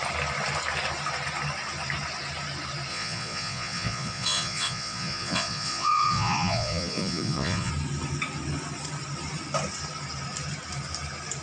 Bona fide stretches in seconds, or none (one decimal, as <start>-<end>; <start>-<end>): 0.0-2.9; 7.7-11.4

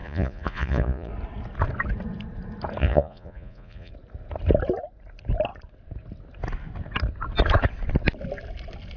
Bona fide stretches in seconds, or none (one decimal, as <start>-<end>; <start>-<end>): 1.1-2.8; 3.9-9.0

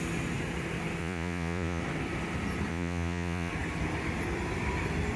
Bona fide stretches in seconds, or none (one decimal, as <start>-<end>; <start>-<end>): 0.0-1.0; 1.8-2.7; 3.5-5.2

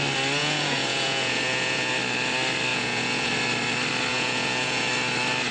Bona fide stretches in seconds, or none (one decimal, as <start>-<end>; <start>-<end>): 0.0-0.4; 1.9-2.7; 3.3-4.1; 4.9-5.5

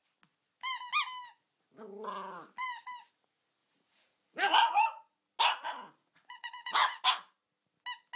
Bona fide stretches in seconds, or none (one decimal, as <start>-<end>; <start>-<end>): 0.0-3.6; 5.2-6.0; 7.0-8.2

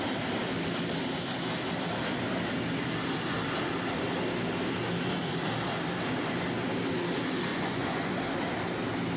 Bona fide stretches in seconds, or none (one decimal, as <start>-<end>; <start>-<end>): 0.0-7.5; 8.1-9.2

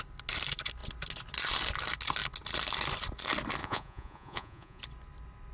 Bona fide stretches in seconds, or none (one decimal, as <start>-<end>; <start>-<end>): 0.0-3.6; 4.8-5.5

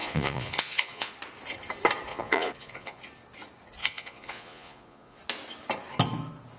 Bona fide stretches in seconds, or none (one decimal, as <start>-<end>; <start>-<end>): 1.1-2.1; 3.0-3.8; 5.2-6.6